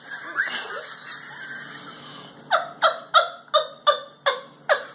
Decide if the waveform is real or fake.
real